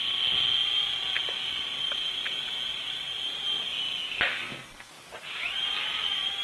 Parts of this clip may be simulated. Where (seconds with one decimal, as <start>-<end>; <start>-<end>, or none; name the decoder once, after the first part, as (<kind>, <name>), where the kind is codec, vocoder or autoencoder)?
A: 4.3-4.9 (codec, SNAC)